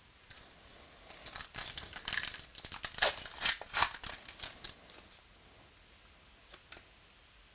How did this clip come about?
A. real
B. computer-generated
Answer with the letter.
A